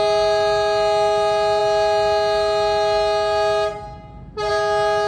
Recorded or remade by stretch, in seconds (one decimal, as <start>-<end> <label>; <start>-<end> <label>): 0.0-5.1 recorded